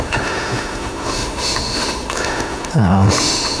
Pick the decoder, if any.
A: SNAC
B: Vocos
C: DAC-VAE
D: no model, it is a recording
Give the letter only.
C